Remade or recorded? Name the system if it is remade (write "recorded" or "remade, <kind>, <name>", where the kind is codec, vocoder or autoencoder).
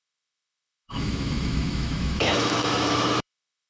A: remade, autoencoder, DAC-VAE